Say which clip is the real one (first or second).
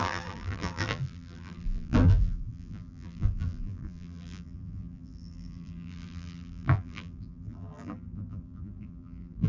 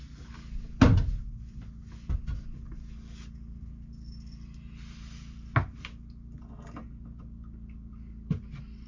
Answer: second